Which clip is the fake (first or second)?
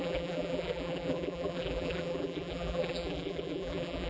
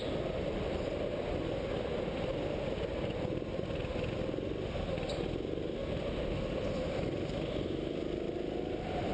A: first